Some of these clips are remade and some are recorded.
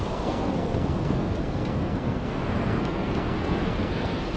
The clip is remade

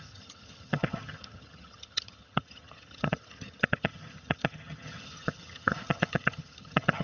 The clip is remade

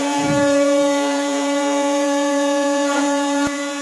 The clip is remade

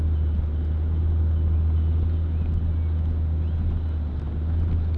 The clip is recorded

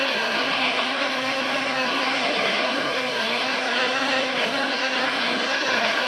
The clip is remade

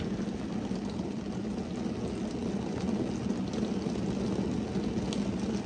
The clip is recorded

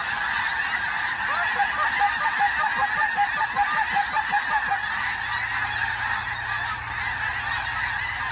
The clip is recorded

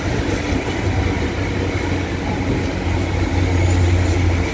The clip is recorded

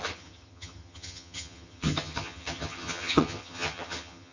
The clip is remade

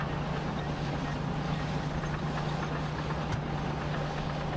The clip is recorded